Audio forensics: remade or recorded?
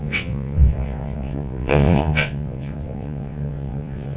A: remade